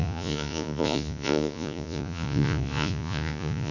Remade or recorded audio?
remade